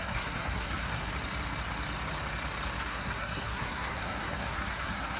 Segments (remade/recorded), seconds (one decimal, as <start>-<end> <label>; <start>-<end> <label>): 0.0-1.1 remade; 1.1-2.8 recorded; 2.8-5.2 remade